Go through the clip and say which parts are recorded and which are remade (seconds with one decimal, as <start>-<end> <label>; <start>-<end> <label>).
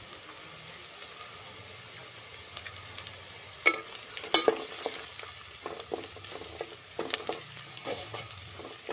0.0-7.7 recorded; 7.7-8.3 remade; 8.3-8.9 recorded